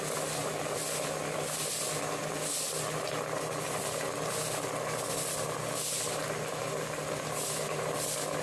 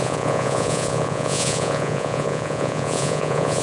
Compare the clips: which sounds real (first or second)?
first